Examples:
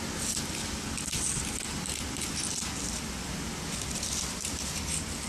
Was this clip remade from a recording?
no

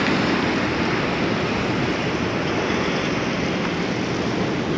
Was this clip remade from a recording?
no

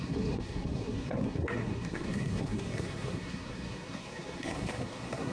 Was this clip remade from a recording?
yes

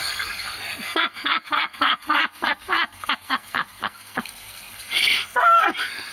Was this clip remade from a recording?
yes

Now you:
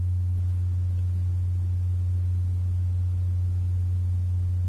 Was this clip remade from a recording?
no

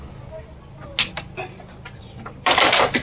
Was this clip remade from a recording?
no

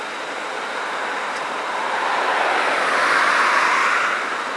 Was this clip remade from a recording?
no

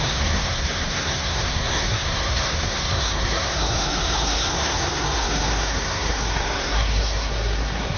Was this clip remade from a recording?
yes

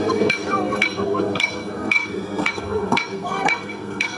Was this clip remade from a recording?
yes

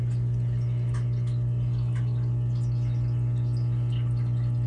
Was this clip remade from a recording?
no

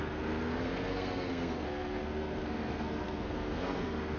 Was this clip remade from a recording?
yes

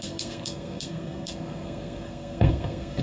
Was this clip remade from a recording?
yes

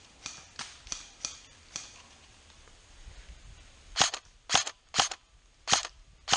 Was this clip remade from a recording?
no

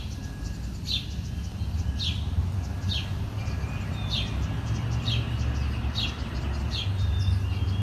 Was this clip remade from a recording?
no